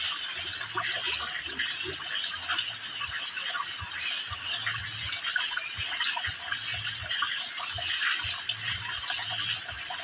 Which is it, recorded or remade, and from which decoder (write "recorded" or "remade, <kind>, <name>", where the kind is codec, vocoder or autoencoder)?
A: recorded